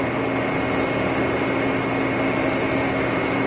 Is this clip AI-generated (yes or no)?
no